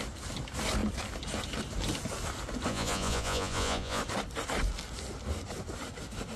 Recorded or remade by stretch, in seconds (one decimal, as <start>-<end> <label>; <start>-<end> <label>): 0.0-2.7 recorded; 2.7-4.0 remade; 4.0-6.4 recorded